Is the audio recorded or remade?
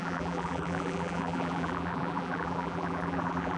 remade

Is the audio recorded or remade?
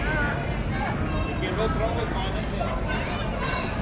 recorded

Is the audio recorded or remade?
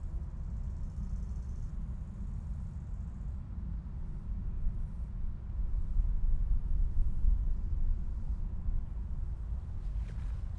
recorded